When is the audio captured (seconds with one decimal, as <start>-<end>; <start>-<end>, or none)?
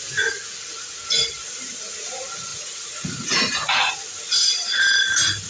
0.0-2.5; 3.9-5.5